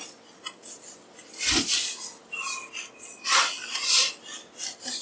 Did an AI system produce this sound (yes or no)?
no